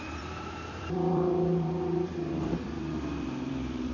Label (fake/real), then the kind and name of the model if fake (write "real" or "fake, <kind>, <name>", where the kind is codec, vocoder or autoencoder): fake, vocoder, BigVGAN v2